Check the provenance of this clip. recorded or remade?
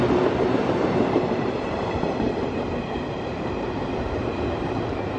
remade